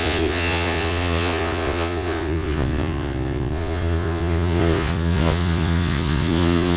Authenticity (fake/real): fake